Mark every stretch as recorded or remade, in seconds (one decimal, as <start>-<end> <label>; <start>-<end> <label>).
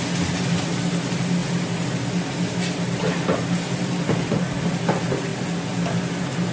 0.0-6.5 recorded